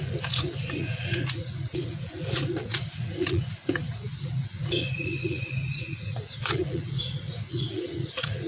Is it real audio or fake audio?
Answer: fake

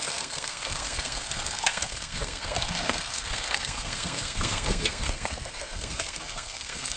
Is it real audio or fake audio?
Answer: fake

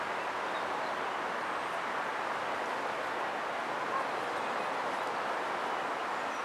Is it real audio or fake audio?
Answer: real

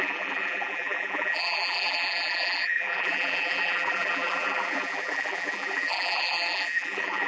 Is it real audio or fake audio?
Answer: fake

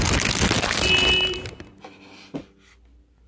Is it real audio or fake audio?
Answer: real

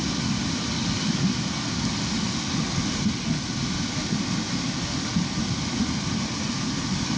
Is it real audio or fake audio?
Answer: real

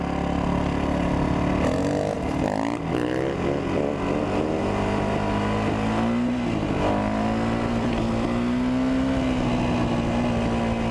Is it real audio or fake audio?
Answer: real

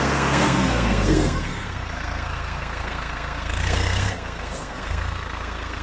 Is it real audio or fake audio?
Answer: fake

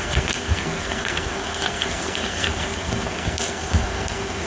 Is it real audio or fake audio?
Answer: fake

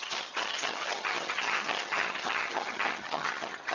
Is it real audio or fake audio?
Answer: fake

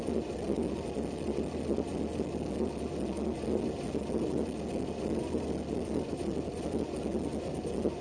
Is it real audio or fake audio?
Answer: real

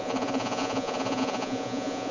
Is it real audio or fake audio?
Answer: fake